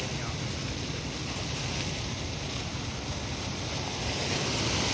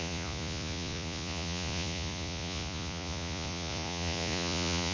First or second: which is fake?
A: second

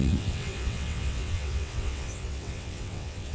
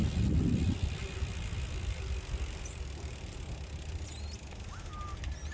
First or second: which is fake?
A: first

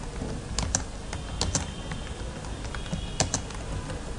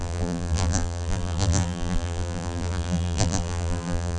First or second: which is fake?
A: second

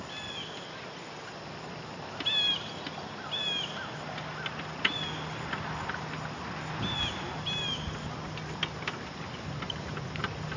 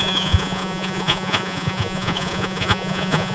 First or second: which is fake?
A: second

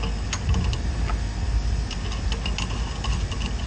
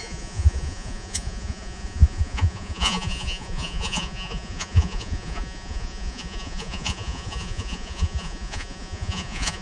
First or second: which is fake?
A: second